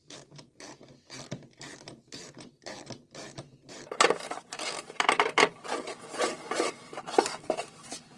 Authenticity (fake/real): fake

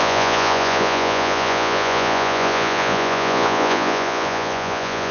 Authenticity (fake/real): fake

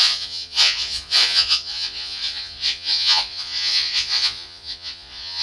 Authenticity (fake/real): fake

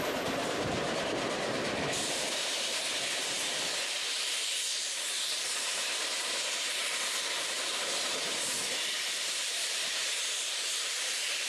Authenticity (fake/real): fake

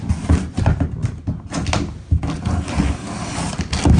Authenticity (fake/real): real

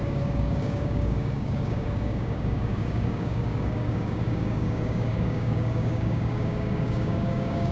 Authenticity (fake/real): fake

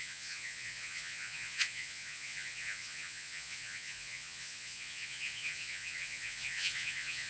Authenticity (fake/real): fake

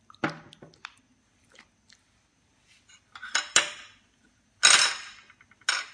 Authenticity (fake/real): real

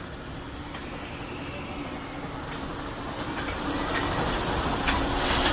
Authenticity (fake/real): real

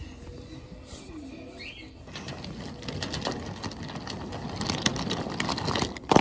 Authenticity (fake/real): real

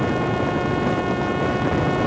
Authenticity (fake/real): real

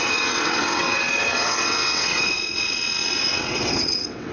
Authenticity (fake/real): fake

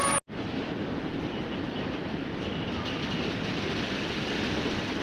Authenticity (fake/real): real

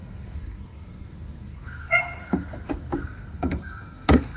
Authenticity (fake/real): fake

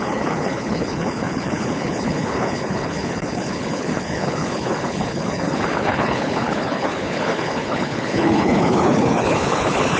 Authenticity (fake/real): fake